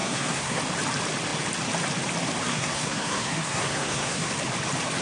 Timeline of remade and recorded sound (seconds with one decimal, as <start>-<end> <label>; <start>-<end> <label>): 0.0-0.6 remade; 0.6-2.5 recorded; 2.5-4.3 remade; 4.3-5.0 recorded